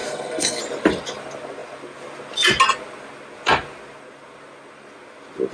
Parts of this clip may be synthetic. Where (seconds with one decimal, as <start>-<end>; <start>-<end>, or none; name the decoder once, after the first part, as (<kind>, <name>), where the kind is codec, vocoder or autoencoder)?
0.0-0.6 (codec, SNAC)